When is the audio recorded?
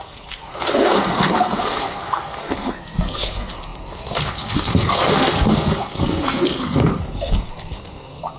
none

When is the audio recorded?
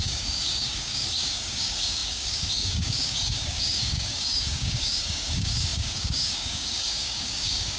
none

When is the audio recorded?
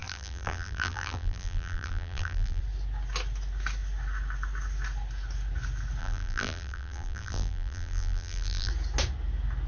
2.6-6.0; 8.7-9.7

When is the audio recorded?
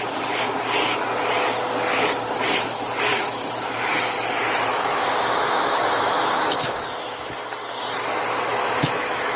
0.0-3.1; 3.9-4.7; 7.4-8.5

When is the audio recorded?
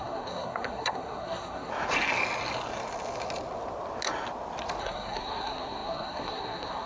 1.7-4.8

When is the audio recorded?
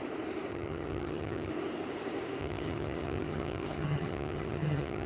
0.0-0.5; 1.5-2.4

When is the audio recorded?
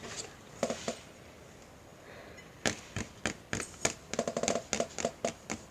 0.0-5.7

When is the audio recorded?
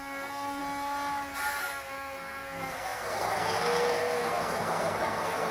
0.6-1.6